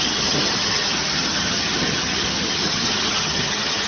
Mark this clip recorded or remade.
remade